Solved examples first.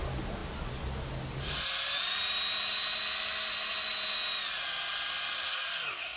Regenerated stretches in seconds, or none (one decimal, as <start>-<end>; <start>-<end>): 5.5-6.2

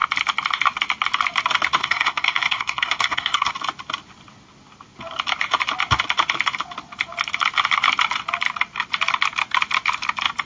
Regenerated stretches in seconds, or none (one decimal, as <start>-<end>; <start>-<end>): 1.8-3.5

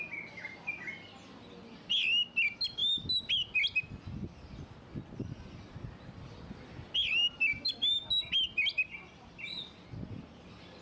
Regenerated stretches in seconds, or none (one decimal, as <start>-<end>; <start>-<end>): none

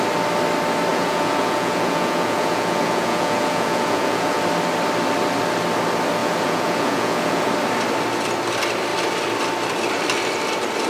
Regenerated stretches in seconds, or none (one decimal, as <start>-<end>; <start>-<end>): 0.9-4.4; 6.2-7.5

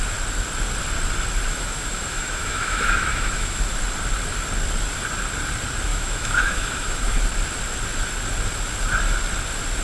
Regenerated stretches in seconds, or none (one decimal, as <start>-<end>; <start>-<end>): 1.5-3.6; 5.9-7.2

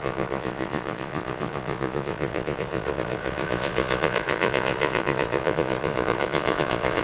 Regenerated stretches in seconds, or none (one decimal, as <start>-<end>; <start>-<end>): 0.0-7.0

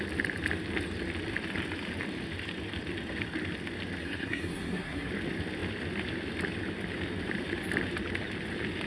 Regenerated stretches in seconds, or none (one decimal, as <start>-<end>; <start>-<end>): 4.0-5.1

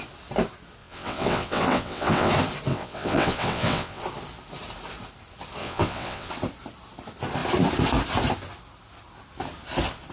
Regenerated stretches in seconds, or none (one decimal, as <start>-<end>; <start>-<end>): 0.8-2.3; 2.7-4.0; 5.6-6.3